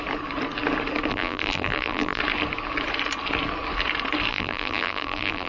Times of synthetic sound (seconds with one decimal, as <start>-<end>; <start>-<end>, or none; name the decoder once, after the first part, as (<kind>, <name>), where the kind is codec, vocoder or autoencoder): 1.1-2.2 (vocoder, BigVGAN v2); 4.3-5.5